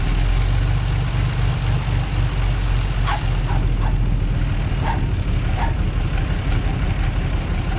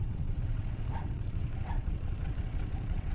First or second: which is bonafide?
first